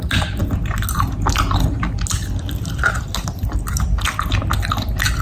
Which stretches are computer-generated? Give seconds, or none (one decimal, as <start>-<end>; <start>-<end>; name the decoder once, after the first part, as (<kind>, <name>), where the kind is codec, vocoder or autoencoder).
none